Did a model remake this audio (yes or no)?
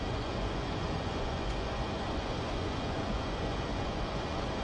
yes